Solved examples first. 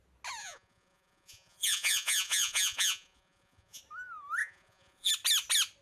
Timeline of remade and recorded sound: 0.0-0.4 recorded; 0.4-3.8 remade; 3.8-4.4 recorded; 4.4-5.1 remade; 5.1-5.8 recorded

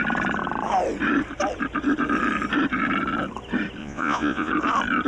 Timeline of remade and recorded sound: 0.0-3.8 recorded; 3.8-4.5 remade; 4.5-5.1 recorded

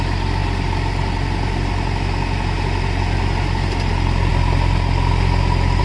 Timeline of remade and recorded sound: 0.0-5.8 recorded

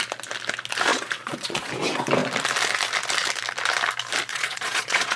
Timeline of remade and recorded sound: 0.0-0.9 recorded; 0.9-1.7 remade; 1.7-4.3 recorded; 4.3-5.2 remade